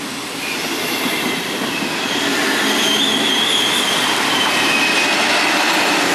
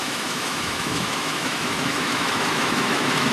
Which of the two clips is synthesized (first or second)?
second